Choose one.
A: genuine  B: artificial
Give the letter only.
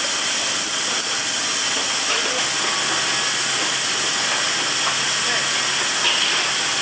A